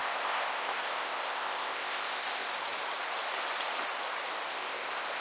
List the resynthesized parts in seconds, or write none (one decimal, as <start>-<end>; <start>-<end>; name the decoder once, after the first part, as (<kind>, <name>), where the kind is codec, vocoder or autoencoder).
0.0-2.5 (codec, ZipCodec); 4.5-5.2